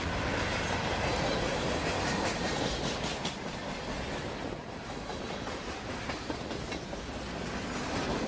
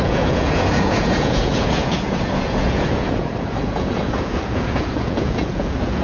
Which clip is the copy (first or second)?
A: second